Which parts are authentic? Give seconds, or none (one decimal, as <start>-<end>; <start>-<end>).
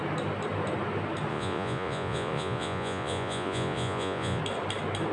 0.0-1.3; 4.4-5.1